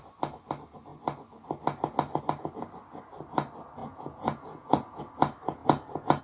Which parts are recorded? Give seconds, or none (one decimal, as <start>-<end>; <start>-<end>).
0.0-3.8; 5.0-5.6